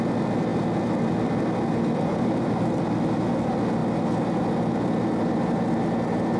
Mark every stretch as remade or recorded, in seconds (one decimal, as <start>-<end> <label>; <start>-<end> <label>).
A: 0.0-6.4 recorded